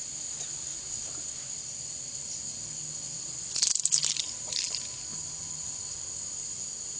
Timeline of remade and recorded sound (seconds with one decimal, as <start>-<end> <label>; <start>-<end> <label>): 0.0-7.0 recorded